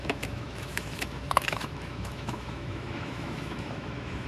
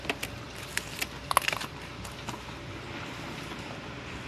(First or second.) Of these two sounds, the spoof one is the first